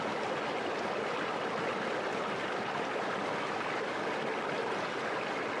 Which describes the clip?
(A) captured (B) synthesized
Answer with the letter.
A